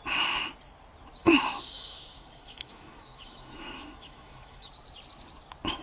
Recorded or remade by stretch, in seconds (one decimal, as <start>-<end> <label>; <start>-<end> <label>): 0.0-1.2 recorded; 1.2-4.7 remade; 4.7-5.8 recorded

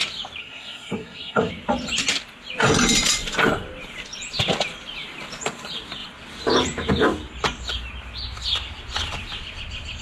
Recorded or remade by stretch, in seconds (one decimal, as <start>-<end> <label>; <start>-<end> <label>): 0.0-0.4 recorded; 0.4-1.5 remade; 1.5-10.0 recorded

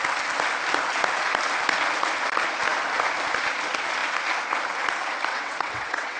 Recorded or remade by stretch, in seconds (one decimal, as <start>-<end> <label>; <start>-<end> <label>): 0.0-5.3 recorded; 5.3-6.2 remade

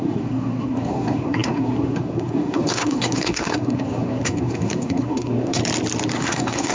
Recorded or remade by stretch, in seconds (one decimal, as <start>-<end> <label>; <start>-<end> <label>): 0.0-5.6 remade; 5.6-6.2 recorded; 6.2-6.7 remade

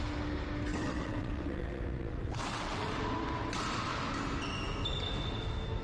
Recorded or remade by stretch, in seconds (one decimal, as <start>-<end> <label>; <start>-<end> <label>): 0.0-0.7 recorded; 0.7-3.0 remade; 3.0-5.8 recorded